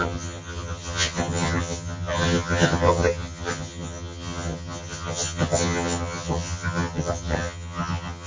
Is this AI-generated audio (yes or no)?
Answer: yes